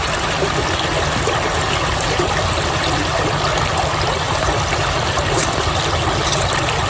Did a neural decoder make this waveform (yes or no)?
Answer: no